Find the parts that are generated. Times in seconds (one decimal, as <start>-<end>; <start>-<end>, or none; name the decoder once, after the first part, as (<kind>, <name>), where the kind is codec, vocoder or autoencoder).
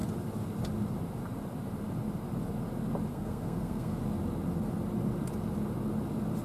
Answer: 3.1-4.0 (codec, SNAC)